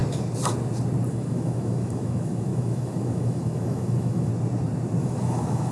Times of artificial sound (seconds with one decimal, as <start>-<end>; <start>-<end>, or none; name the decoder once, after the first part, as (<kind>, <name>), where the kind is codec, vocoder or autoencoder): 1.1-4.3 (autoencoder, DAC-VAE); 5.0-5.7

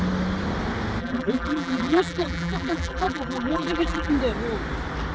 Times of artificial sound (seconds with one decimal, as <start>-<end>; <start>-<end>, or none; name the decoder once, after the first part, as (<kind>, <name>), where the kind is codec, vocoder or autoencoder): 1.0-4.1 (vocoder, BigVGAN v2)

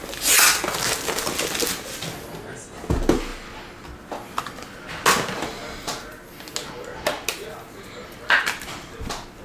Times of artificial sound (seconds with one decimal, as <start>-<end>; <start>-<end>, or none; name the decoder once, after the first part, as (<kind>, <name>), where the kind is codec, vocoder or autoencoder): none

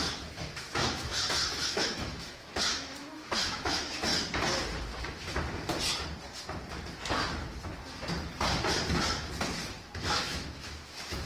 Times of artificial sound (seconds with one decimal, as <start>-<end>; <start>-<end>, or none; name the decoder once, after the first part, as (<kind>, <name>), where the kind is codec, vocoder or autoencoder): 0.0-4.1 (autoencoder, DAC-VAE); 5.0-5.7; 9.6-11.3

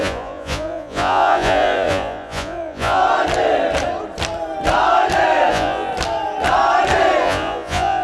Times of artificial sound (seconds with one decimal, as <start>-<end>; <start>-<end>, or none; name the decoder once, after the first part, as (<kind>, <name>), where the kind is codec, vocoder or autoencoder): 0.0-3.0 (vocoder, Vocos); 5.5-5.9; 7.2-8.0

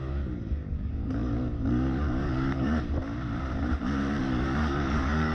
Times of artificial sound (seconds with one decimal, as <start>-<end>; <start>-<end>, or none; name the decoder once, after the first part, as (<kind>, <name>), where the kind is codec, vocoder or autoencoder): 0.0-3.0 (codec, DAC); 4.2-5.3

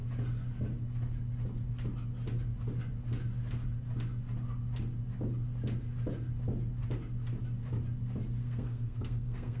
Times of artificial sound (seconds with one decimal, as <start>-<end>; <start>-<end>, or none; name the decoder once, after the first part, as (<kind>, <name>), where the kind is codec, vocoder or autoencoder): 8.4-9.6 (codec, SNAC)